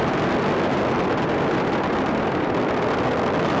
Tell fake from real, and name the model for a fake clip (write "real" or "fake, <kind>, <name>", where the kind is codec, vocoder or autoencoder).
real